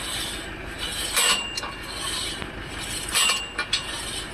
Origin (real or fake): real